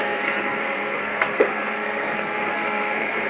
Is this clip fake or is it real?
fake